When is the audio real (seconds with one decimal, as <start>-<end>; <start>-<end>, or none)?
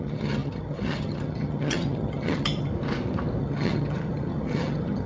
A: 2.7-3.4